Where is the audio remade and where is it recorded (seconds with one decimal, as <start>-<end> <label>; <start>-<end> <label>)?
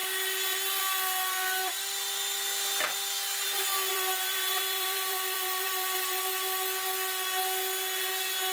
0.0-3.9 recorded; 3.9-6.2 remade; 6.2-8.5 recorded